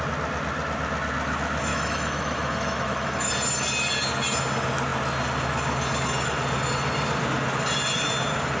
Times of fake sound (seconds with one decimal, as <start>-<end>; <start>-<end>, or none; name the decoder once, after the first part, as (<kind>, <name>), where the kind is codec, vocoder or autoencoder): 1.7-3.3 (autoencoder, DAC-VAE)